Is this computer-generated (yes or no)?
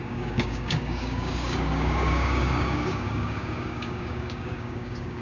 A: yes